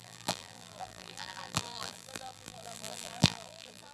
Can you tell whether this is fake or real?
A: fake